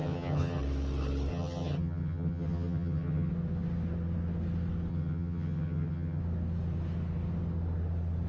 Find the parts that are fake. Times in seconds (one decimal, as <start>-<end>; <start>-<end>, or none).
0.0-0.6; 1.3-3.3; 4.9-6.2